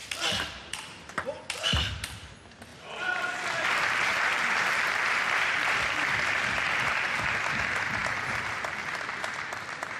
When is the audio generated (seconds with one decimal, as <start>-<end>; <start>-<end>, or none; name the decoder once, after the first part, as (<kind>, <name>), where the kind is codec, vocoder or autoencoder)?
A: 0.0-2.3 (vocoder, BigVGAN v2); 2.7-7.2